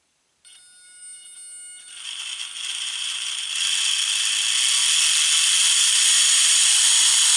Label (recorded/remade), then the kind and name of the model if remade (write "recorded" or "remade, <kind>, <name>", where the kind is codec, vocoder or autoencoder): recorded